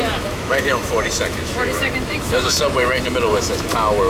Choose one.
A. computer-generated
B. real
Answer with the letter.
A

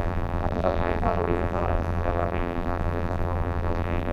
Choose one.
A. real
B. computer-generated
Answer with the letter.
B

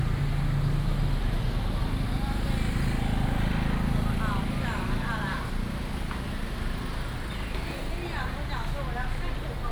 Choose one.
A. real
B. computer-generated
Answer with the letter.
A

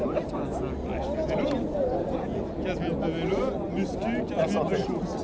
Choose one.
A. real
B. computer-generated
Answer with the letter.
A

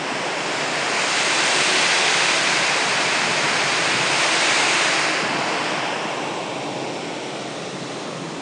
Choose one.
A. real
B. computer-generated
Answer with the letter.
A